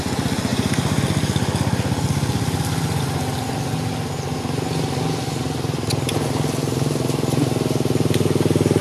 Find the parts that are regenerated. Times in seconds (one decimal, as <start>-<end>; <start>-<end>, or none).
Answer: 0.5-1.0